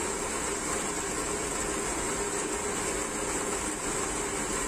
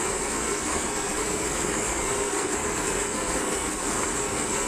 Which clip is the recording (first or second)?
first